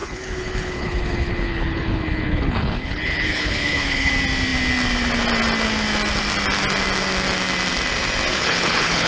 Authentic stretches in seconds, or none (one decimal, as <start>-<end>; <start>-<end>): 4.1-8.3